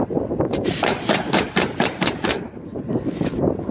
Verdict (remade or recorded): remade